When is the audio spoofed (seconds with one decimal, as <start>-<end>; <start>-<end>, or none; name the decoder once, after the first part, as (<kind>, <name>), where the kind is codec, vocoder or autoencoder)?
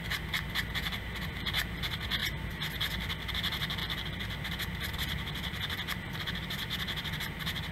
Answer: none